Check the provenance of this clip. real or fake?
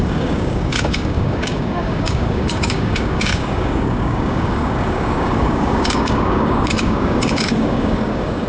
fake